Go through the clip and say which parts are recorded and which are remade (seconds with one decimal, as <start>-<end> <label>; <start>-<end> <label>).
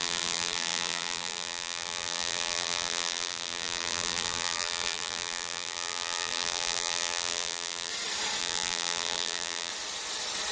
0.0-7.9 remade; 7.9-8.4 recorded; 8.4-9.7 remade; 9.7-10.5 recorded